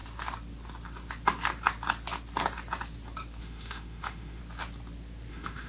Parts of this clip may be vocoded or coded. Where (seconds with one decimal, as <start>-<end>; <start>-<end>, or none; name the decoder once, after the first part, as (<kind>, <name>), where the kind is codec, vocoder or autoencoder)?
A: 3.4-4.4 (autoencoder, DAC-VAE); 5.3-5.7